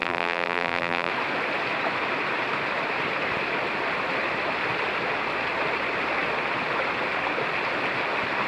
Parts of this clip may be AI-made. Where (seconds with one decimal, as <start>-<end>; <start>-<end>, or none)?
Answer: 0.0-1.1